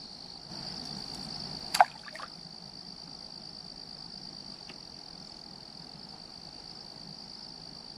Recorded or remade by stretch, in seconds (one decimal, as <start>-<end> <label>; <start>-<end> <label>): 0.0-8.0 recorded